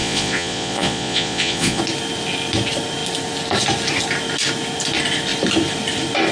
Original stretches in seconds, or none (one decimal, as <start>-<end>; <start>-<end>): 1.8-6.3